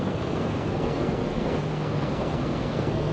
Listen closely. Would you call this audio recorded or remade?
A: remade